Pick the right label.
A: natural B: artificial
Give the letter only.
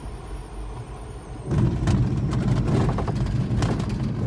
A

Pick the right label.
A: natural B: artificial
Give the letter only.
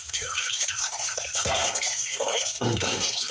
B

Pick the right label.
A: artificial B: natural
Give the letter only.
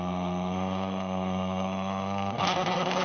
A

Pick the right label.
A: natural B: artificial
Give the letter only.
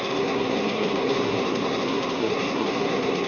B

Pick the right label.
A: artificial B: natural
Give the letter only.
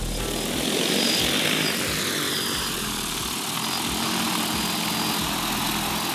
B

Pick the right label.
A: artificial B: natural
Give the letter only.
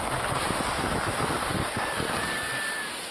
B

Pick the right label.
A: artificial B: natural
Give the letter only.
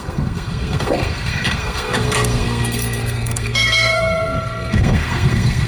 A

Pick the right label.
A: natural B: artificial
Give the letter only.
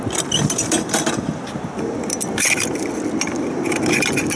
A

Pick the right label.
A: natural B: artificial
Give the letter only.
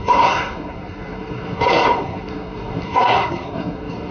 B